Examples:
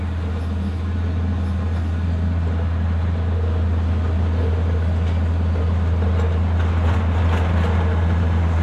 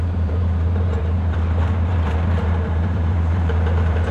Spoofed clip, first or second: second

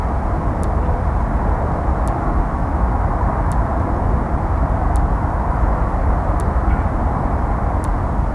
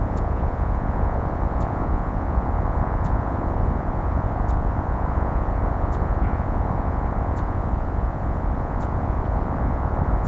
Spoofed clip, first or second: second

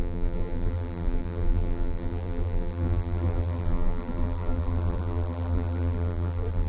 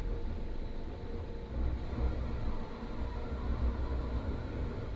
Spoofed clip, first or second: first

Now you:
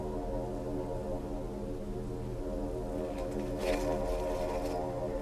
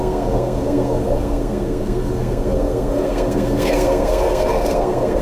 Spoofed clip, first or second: second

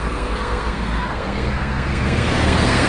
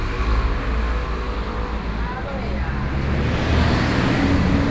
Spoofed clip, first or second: first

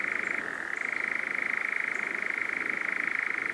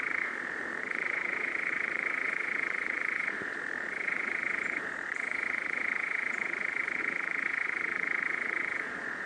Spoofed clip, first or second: second